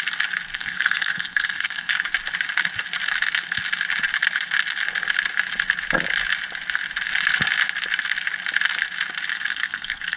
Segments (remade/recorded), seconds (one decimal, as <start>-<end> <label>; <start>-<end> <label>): 0.0-0.5 recorded; 0.5-1.9 remade; 1.9-9.3 recorded; 9.3-10.2 remade